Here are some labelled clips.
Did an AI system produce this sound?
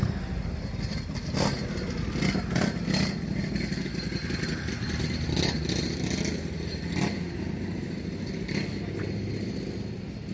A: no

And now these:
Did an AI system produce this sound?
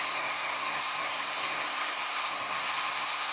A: yes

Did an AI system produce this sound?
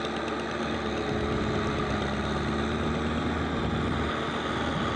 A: no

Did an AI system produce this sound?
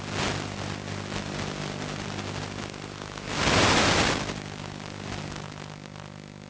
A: no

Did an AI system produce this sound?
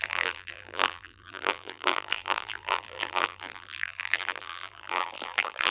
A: yes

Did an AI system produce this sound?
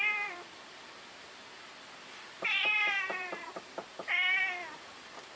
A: yes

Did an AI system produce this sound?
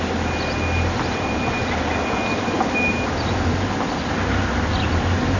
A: no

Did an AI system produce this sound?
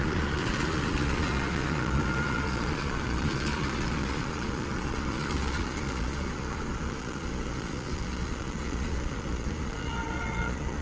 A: yes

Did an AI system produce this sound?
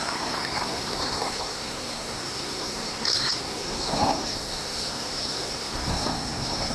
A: yes